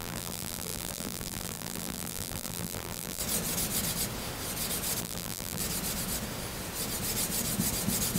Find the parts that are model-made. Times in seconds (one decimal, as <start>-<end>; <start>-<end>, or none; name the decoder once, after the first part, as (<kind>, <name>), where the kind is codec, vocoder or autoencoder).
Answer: 0.0-3.2 (vocoder, BigVGAN v2); 5.0-5.6